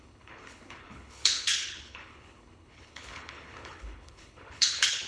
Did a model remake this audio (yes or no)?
yes